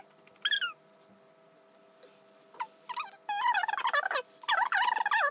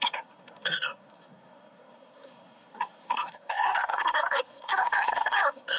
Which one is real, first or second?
first